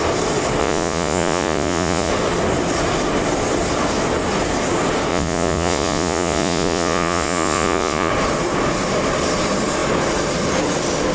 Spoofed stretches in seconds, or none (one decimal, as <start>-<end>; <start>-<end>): 0.6-2.1; 5.1-8.1